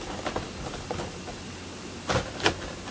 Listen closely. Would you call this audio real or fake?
real